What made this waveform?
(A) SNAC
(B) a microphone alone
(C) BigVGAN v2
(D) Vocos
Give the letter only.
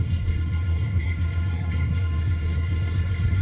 A